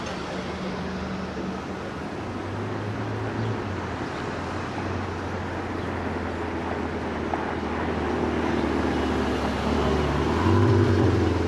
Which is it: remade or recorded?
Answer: recorded